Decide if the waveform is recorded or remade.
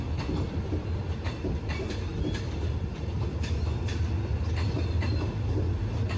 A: recorded